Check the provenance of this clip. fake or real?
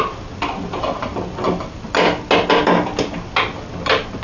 real